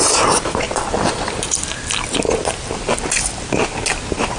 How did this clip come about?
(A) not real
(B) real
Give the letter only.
B